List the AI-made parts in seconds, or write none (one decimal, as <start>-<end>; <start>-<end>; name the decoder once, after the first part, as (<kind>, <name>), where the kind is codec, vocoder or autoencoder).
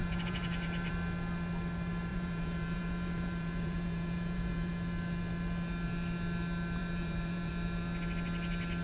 0.0-0.9 (vocoder, Vocos); 2.1-4.7; 6.8-7.5